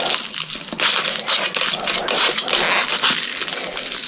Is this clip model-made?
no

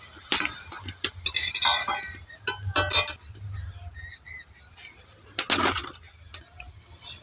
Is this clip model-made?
no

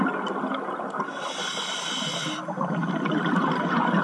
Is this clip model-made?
no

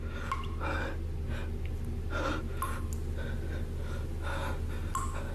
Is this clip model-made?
no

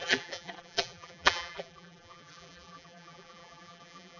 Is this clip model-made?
yes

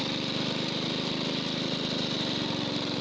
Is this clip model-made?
no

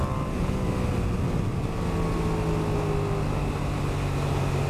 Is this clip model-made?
no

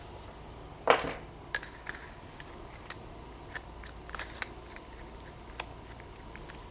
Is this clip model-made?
no